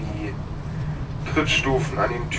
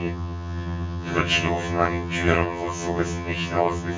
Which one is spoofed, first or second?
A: second